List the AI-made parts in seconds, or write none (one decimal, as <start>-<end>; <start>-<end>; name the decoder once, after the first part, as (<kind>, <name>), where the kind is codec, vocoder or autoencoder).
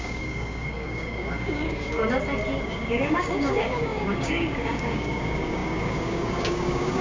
0.0-2.0 (codec, DAC); 2.6-7.0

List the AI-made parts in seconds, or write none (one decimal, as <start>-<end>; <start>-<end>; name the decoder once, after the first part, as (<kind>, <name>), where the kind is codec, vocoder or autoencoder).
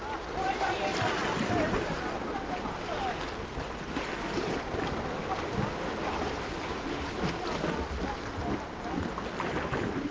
none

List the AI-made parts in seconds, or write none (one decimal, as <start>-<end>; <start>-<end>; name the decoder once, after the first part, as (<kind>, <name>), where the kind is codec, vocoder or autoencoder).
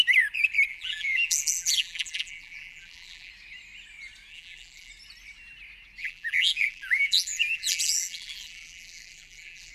0.7-3.3 (vocoder, BigVGAN v2); 4.3-4.9; 6.0-9.7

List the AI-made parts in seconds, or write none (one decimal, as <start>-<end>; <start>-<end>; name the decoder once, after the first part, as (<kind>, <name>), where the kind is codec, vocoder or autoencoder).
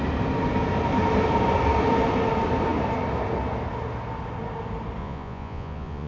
5.0-6.1 (vocoder, Vocos)